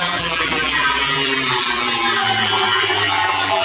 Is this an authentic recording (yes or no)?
no